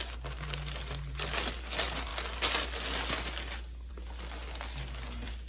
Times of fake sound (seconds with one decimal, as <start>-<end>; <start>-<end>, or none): none